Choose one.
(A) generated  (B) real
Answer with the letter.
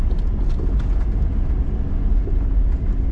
B